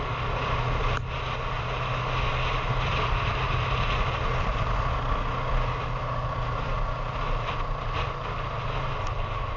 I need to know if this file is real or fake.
real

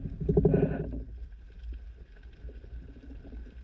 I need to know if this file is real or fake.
real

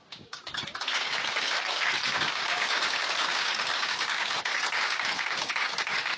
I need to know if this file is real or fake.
fake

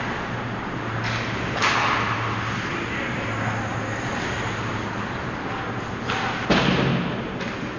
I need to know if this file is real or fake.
real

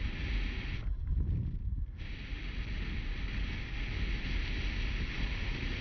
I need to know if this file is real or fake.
real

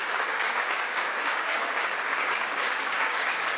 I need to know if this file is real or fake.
fake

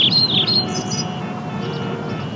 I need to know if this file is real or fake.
real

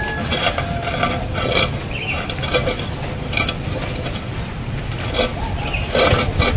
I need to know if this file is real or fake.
real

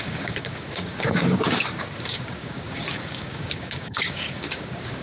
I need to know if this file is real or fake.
fake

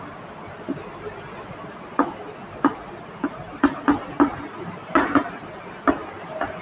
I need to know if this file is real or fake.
real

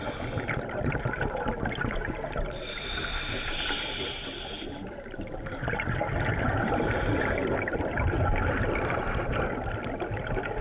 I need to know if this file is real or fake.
real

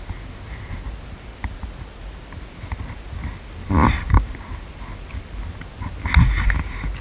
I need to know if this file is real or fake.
real